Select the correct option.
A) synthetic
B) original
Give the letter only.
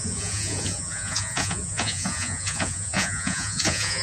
A